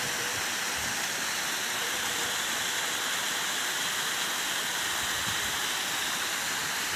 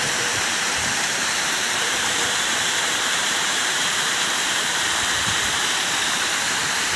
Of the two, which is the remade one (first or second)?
second